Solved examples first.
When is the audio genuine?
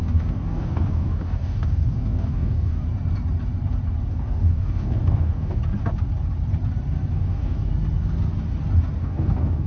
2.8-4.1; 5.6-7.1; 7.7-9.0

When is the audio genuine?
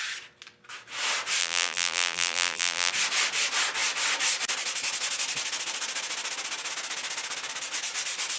0.0-1.4; 2.9-8.4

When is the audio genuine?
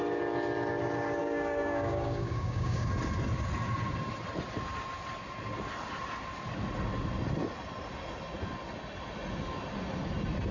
0.0-1.2; 2.9-10.5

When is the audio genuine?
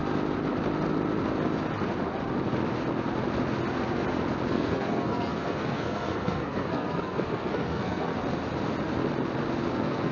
0.0-4.5; 8.1-9.7